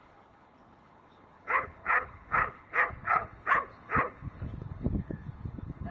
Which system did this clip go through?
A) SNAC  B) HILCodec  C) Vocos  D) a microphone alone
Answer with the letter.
B